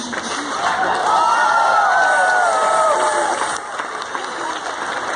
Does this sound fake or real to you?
real